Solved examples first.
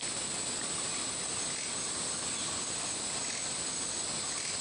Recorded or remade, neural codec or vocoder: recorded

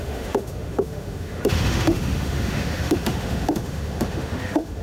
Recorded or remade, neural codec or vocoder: remade, autoencoder, DAC-VAE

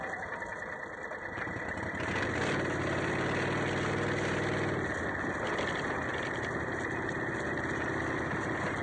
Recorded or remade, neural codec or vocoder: recorded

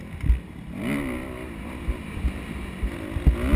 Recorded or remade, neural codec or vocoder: recorded